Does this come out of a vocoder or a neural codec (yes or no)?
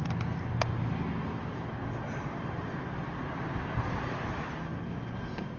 no